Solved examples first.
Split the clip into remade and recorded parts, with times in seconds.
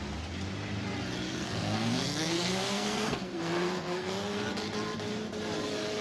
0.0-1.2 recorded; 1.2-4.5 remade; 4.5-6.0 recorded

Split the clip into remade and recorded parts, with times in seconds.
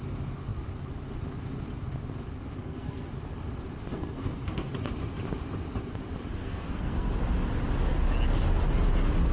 0.0-2.6 recorded; 2.6-3.1 remade; 3.1-3.9 recorded; 3.9-4.7 remade; 4.7-6.4 recorded; 6.4-7.1 remade; 7.1-9.3 recorded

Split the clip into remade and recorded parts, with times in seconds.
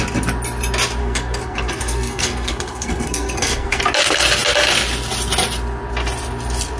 0.0-1.0 recorded; 1.0-3.8 remade; 3.8-6.8 recorded